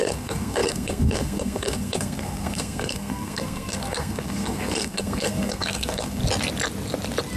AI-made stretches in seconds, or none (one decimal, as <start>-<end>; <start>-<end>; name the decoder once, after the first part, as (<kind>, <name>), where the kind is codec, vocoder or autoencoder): 0.0-6.2 (codec, SNAC)